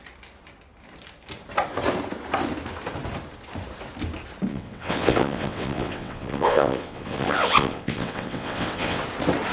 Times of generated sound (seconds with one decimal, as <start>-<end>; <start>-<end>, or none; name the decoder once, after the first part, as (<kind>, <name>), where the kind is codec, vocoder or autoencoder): 4.5-9.0 (vocoder, WaveNeXt)